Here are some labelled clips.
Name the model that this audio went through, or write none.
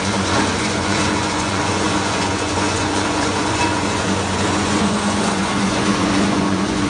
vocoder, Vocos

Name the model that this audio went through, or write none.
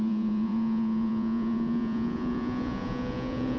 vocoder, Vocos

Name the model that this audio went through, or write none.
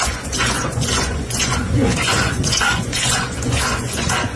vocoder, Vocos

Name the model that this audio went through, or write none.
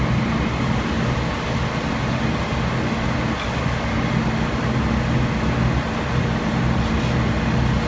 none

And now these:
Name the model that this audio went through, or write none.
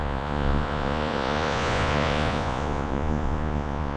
vocoder, Vocos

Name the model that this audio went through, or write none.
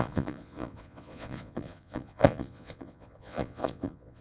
vocoder, Vocos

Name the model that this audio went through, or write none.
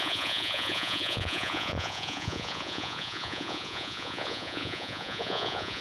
vocoder, Vocos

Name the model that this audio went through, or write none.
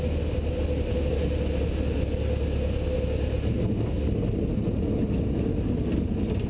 none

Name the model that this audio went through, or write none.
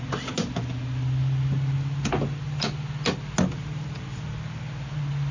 none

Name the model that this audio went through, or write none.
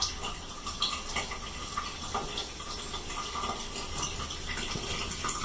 none